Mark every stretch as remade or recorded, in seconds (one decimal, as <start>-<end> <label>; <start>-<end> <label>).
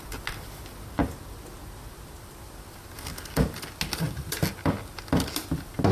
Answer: 0.0-5.9 recorded